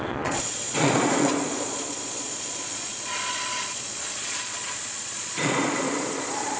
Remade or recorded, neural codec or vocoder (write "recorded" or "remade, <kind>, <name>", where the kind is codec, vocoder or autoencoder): remade, vocoder, Vocos